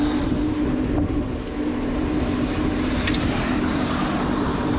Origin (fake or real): fake